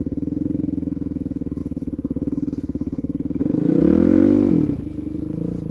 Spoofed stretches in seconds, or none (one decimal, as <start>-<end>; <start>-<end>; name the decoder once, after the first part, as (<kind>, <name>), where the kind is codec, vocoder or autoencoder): 0.0-3.8 (autoencoder, DAC-VAE)